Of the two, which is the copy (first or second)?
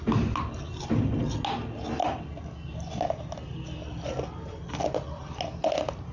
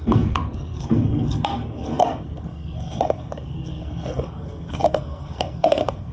second